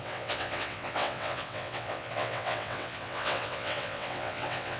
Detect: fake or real fake